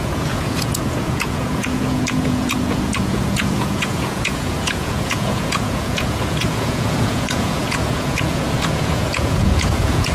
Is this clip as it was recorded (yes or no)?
no